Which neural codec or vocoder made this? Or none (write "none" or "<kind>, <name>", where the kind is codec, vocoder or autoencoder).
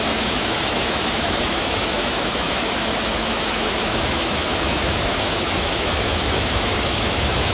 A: autoencoder, DAC-VAE